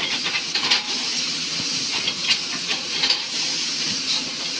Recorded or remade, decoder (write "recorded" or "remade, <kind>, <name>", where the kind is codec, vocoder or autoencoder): remade, vocoder, Vocos